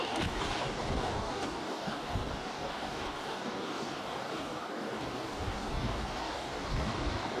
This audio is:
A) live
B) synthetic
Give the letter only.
B